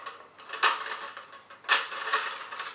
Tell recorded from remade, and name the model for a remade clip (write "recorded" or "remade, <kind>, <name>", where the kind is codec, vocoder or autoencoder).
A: recorded